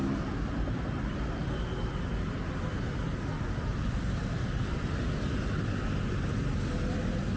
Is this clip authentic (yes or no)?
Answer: yes